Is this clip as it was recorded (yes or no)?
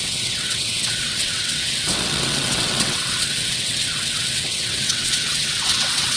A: no